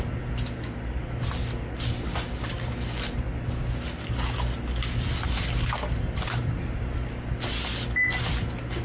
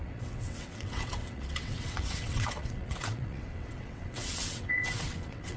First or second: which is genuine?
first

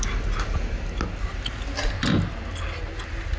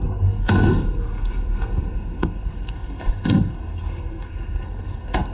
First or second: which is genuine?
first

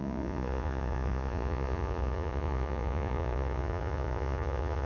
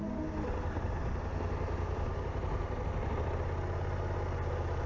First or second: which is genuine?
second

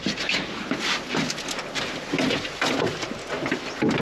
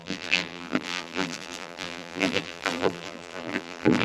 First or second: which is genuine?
first